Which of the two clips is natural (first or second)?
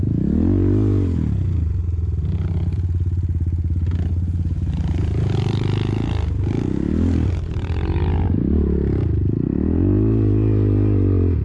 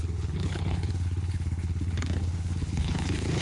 first